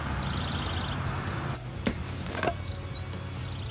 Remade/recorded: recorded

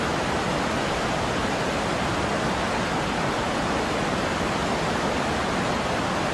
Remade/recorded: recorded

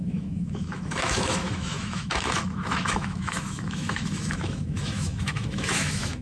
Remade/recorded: remade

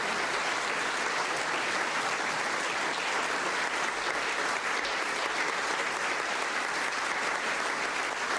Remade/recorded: recorded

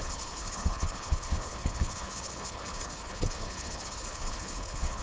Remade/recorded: remade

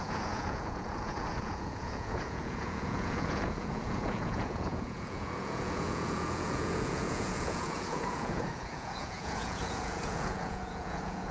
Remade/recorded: remade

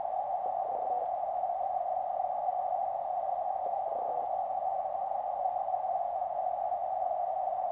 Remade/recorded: recorded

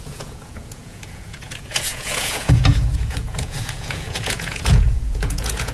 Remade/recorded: remade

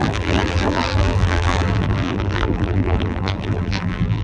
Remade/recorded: remade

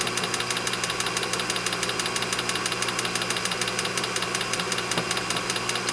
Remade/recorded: recorded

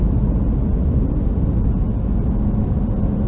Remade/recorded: recorded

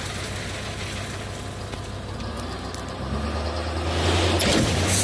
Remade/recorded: recorded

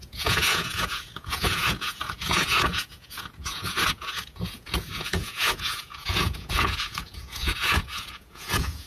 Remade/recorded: remade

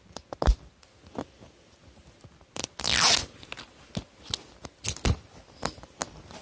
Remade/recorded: recorded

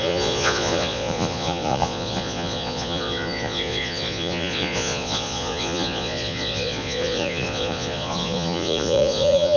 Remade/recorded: remade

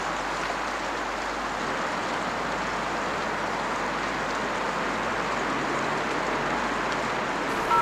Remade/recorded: recorded